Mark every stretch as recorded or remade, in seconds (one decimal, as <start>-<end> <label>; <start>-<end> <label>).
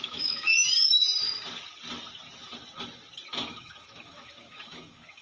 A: 0.0-0.5 remade; 0.5-3.3 recorded; 3.3-5.2 remade